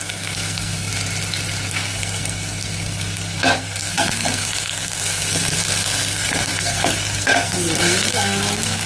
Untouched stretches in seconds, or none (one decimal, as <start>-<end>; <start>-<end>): 0.9-1.7